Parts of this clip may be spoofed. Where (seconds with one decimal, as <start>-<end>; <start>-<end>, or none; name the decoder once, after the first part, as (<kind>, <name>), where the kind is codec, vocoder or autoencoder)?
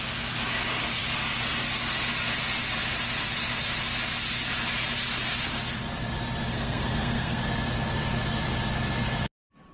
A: 6.5-7.4 (codec, SNAC)